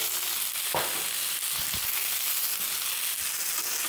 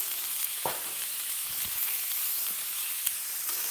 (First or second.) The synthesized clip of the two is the second